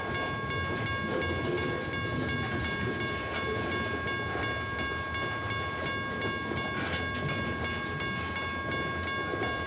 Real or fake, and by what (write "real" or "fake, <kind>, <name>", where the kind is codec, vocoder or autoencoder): real